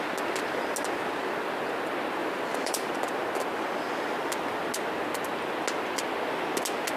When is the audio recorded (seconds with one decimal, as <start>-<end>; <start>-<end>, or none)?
0.0-2.2; 2.9-7.0